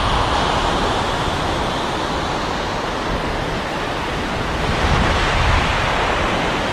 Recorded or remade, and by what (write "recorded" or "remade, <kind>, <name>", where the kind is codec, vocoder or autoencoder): recorded